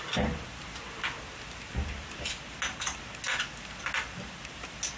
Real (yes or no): yes